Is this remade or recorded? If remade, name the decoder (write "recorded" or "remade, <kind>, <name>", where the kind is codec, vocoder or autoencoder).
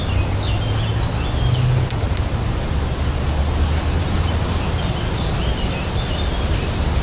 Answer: recorded